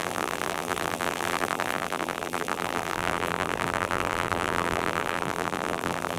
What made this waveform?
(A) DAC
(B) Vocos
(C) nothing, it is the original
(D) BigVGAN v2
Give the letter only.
D